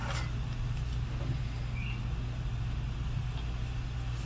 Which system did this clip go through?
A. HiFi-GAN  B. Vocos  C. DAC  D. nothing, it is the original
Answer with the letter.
D